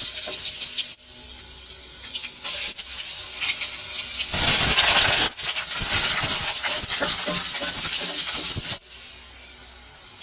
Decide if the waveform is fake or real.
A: real